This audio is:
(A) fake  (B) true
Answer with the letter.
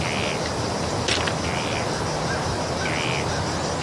B